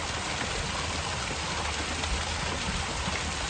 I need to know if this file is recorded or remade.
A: recorded